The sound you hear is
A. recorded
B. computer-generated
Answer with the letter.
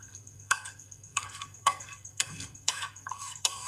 B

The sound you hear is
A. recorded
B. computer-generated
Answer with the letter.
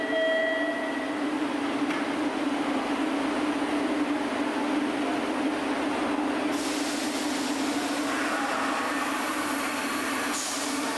A